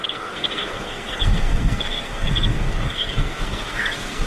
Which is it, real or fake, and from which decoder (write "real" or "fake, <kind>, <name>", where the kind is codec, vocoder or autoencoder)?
fake, codec, SNAC